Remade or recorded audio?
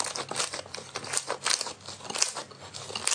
recorded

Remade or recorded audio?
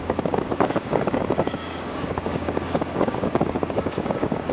remade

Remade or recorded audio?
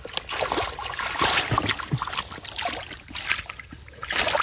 recorded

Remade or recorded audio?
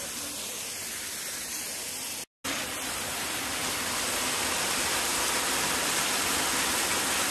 recorded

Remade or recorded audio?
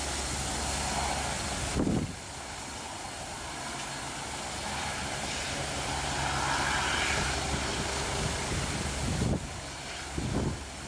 recorded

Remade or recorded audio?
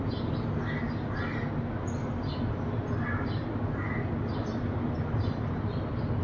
recorded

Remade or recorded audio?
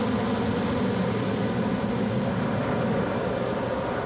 recorded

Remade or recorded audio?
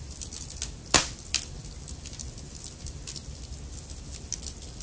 recorded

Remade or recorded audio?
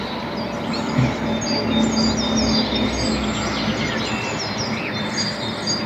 recorded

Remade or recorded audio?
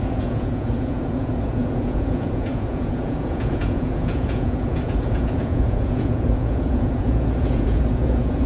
remade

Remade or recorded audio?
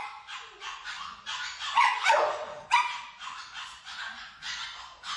remade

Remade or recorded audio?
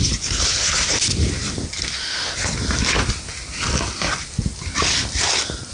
recorded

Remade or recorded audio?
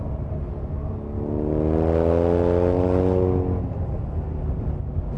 recorded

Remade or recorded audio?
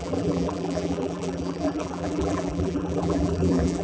remade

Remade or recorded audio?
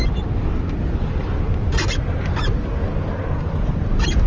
recorded